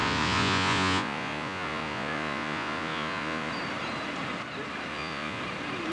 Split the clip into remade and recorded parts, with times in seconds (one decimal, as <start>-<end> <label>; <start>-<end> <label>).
0.0-3.5 remade; 3.5-4.9 recorded; 4.9-5.4 remade; 5.4-5.9 recorded